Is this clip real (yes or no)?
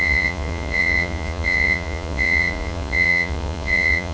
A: no